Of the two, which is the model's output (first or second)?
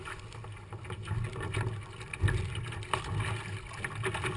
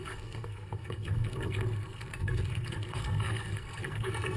second